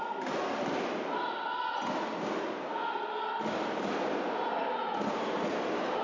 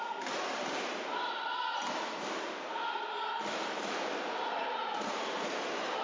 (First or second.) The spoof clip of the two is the second